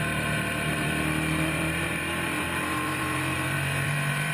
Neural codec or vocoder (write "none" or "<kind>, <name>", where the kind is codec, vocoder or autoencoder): vocoder, BigVGAN v2